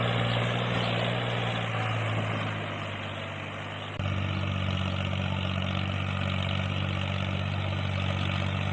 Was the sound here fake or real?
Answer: real